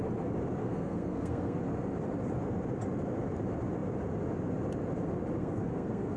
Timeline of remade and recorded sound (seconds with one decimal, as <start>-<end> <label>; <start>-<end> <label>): 0.0-0.6 recorded; 0.6-1.6 remade; 1.6-5.4 recorded; 5.4-6.2 remade